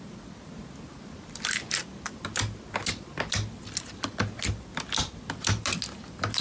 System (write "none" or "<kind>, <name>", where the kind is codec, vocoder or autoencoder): none